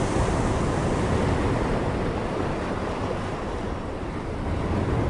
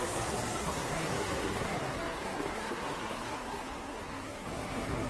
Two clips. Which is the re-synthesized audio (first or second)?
second